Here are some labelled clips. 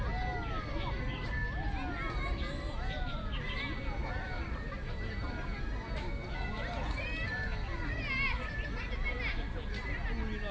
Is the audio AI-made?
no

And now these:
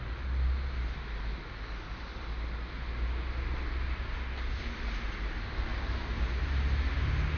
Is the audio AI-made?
no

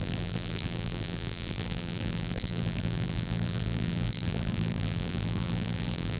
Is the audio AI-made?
yes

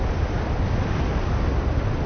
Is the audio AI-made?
no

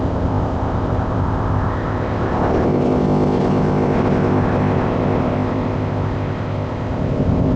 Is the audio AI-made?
yes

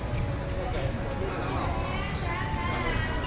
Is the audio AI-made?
no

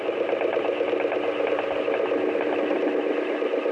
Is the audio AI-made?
no